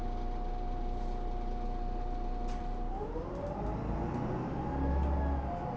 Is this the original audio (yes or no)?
yes